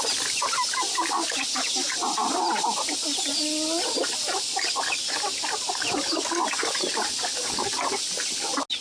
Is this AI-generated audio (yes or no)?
no